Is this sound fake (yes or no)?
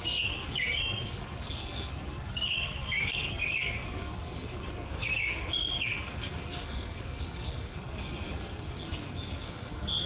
yes